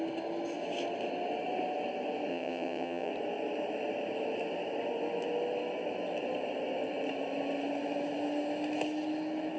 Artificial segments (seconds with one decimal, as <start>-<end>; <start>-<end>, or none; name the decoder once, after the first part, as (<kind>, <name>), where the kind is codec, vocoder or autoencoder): 2.3-3.1 (vocoder, WaveNeXt)